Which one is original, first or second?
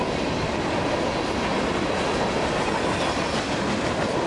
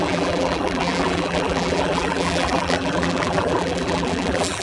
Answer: first